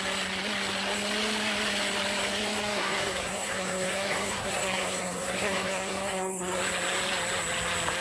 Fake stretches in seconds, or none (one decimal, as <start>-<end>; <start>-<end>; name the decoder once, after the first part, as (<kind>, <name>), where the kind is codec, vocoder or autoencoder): 2.6-6.6 (codec, SNAC)